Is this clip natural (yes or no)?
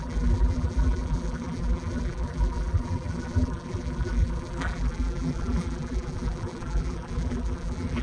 no